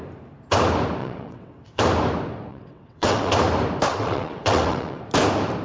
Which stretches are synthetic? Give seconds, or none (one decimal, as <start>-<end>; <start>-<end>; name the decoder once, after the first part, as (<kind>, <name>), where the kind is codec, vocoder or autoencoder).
1.0-1.8 (vocoder, WaveNeXt); 2.5-3.3; 3.9-5.0